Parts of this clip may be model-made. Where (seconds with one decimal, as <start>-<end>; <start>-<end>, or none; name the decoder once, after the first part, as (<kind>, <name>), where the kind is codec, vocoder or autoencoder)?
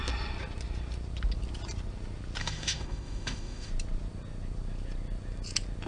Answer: 2.4-3.7 (autoencoder, DAC-VAE)